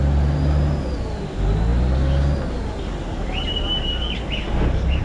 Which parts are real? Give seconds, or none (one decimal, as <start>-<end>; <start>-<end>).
0.0-5.0